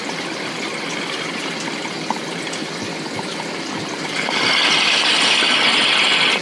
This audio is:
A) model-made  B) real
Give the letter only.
A